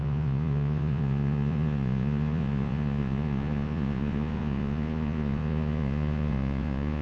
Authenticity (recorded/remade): remade